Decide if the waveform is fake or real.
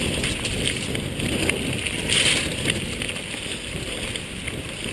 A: real